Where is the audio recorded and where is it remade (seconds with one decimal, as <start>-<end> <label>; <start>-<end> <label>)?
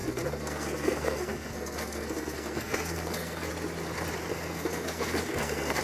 0.0-3.5 remade; 3.5-4.3 recorded; 4.3-5.8 remade